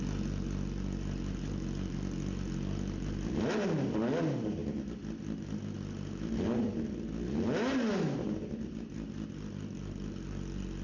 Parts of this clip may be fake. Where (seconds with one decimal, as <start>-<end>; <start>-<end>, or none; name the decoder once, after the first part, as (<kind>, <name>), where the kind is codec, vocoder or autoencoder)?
none